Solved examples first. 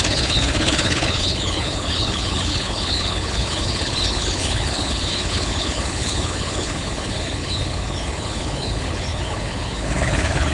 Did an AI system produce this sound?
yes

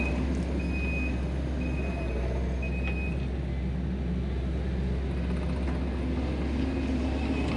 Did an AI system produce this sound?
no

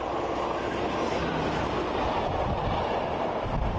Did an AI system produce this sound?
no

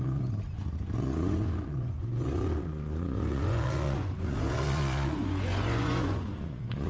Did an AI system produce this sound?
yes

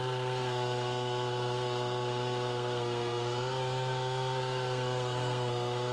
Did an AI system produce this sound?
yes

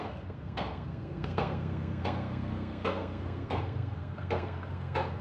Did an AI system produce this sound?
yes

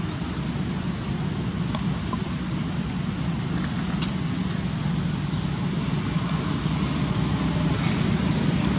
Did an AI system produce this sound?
no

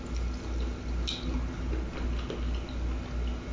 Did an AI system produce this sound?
no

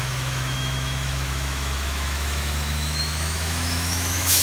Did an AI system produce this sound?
yes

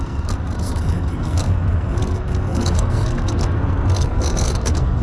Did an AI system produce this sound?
yes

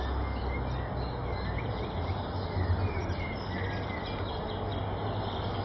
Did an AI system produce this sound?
no